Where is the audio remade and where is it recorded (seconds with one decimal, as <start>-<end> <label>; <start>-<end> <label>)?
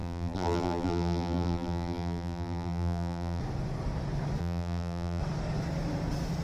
0.0-3.4 remade; 3.4-4.4 recorded; 4.4-5.2 remade; 5.2-6.4 recorded